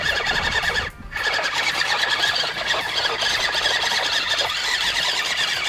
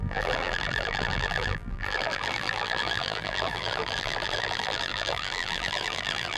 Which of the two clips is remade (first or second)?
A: second